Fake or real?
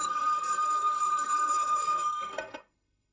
fake